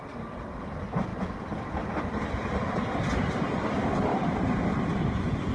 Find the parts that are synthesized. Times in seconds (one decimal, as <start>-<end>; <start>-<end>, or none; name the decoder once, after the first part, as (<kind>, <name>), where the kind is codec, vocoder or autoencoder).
none